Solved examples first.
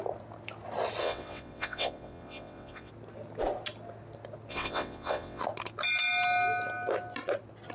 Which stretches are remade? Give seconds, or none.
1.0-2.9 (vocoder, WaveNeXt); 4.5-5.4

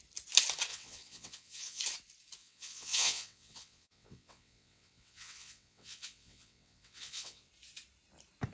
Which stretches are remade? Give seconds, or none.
0.7-1.8 (vocoder, WaveNeXt); 2.4-7.5

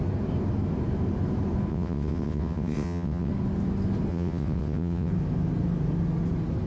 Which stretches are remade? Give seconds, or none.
1.7-3.3 (vocoder, WaveNeXt); 4.1-5.1

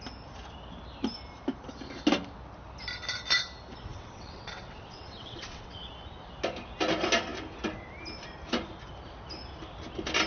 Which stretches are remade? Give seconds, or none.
3.9-5.9 (vocoder, WaveNeXt)

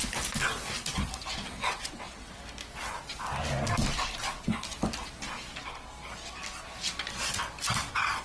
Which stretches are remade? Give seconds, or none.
1.6-2.4 (vocoder, WaveNeXt)